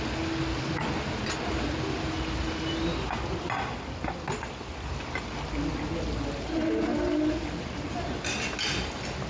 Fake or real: real